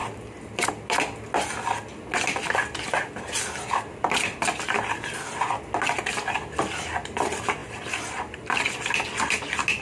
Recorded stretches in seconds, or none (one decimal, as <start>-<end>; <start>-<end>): 0.7-9.8